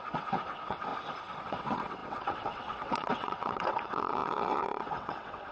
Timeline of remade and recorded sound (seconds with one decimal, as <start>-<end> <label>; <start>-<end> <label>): 0.0-0.9 remade; 0.9-1.4 recorded; 1.4-5.5 remade